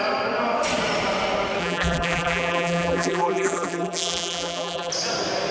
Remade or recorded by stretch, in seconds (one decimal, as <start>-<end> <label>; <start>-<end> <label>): 0.0-1.6 recorded; 1.6-4.9 remade; 4.9-5.5 recorded